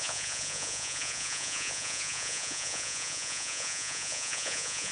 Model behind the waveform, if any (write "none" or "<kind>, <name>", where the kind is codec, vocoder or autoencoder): vocoder, Vocos